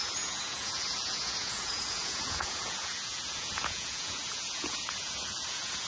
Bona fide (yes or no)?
no